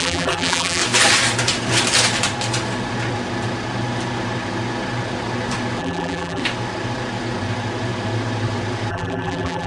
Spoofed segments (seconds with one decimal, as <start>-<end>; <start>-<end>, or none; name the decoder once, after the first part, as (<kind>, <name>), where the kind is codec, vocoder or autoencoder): 0.0-0.8 (vocoder, BigVGAN v2); 5.8-6.4; 8.9-9.7